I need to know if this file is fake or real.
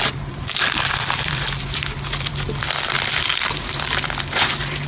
fake